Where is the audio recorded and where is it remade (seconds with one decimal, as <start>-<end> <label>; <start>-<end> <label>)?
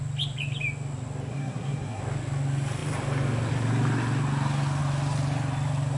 0.0-1.3 recorded; 1.3-2.0 remade; 2.0-6.0 recorded